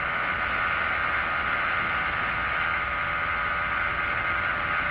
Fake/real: real